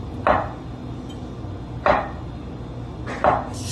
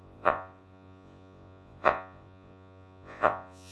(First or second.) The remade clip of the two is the second